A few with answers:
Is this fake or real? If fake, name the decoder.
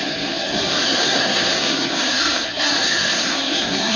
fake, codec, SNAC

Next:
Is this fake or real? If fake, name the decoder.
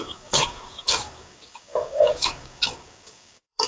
fake, codec, DAC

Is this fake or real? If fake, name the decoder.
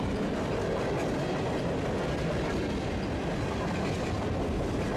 real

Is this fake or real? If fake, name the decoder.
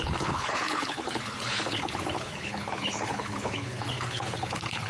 fake, codec, HILCodec